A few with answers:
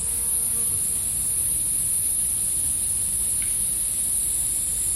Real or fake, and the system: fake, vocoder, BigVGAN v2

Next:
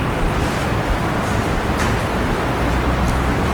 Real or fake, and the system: real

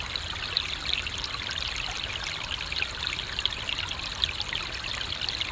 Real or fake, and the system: real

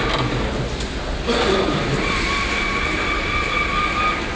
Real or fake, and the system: real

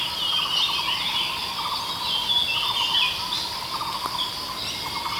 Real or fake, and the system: real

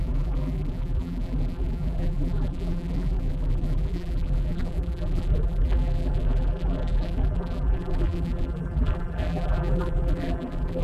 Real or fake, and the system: fake, vocoder, BigVGAN v2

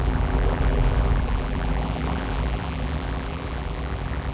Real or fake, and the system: fake, vocoder, BigVGAN v2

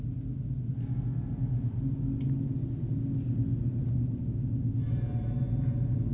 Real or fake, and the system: real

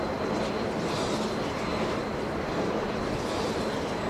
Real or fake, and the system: real